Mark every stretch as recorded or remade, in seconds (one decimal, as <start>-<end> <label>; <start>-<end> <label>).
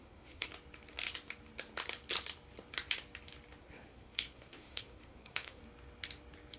0.0-0.5 remade; 0.5-3.6 recorded; 3.6-5.6 remade; 5.6-6.6 recorded